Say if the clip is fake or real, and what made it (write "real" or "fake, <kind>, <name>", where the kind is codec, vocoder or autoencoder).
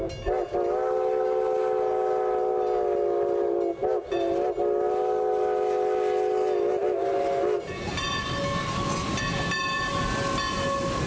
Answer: real